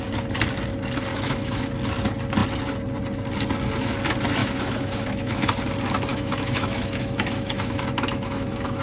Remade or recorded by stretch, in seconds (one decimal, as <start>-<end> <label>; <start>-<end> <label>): 0.0-1.1 recorded; 1.1-1.7 remade; 1.7-4.4 recorded; 4.4-5.5 remade; 5.5-6.1 recorded; 6.1-8.8 remade